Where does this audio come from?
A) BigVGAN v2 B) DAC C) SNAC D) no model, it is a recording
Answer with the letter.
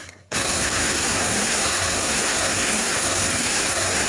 C